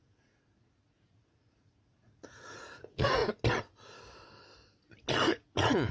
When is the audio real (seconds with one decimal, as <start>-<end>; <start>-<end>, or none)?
3.2-5.3